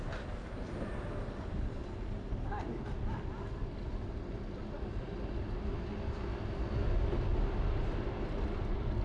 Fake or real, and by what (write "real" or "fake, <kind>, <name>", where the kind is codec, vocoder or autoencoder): real